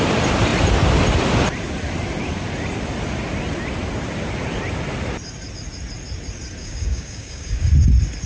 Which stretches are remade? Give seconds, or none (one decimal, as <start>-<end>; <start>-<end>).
6.6-7.7